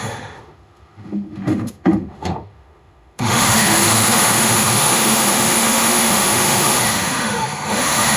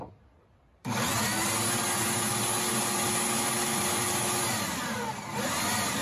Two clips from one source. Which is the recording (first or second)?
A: second